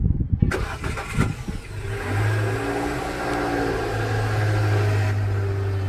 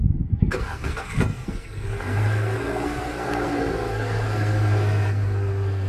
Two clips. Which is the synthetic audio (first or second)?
second